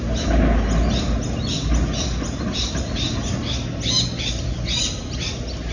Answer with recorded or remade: recorded